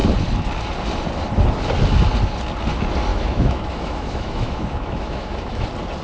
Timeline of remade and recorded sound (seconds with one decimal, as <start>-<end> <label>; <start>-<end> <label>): 0.0-3.1 recorded; 3.1-5.6 remade; 5.6-6.0 recorded